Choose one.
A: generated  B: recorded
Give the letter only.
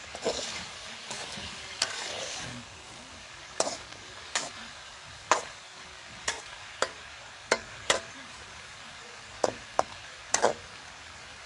A